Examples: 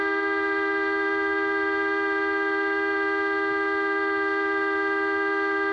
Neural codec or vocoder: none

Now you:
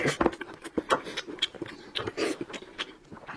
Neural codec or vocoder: vocoder, BigVGAN v2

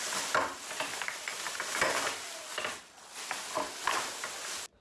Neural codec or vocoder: none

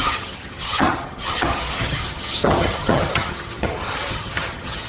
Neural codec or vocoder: vocoder, HiFi-GAN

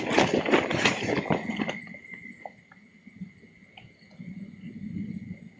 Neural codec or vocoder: none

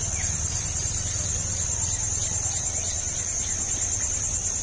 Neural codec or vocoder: none